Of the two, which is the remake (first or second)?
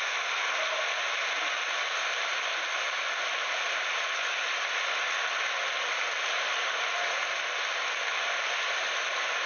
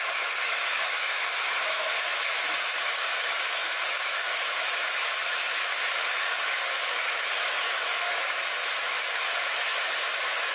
second